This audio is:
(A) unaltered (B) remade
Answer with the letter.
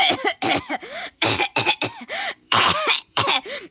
B